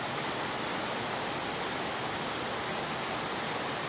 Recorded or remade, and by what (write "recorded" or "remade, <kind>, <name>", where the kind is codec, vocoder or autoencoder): recorded